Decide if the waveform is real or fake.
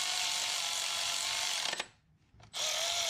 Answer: real